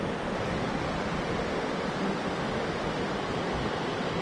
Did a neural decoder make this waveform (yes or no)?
no